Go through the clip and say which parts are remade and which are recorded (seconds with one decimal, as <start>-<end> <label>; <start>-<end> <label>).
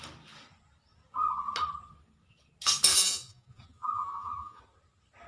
0.0-2.9 recorded; 2.9-4.6 remade; 4.6-5.3 recorded